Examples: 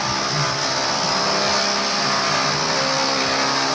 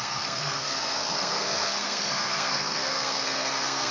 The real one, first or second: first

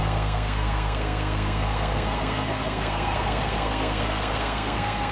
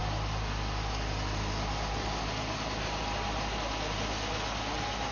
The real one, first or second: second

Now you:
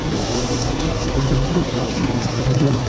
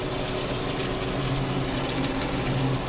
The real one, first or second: second